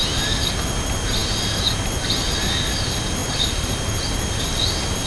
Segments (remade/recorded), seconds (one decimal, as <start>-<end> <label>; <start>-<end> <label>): 0.0-3.2 recorded; 3.2-4.5 remade; 4.5-5.1 recorded